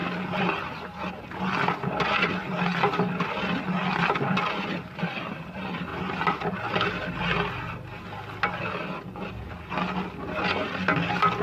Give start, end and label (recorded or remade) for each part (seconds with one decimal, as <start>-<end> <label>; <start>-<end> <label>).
0.0-11.4 recorded